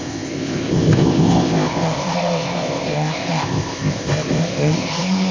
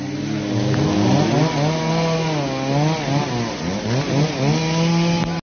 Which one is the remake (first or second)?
first